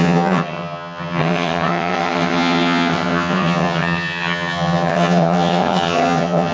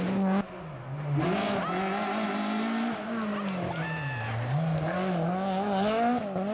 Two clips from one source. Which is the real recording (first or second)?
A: second